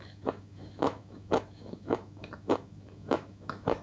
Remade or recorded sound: remade